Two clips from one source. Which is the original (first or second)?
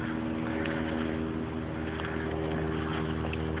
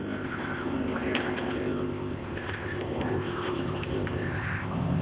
first